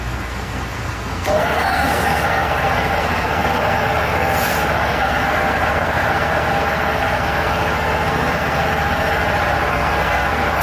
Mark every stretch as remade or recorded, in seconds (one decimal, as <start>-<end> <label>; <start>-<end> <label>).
0.0-9.2 remade; 9.2-9.7 recorded; 9.7-10.6 remade